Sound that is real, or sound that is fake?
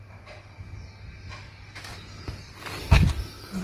real